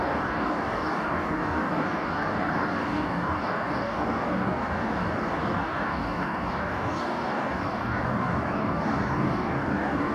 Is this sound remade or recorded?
remade